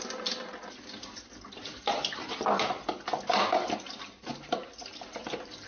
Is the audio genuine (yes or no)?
yes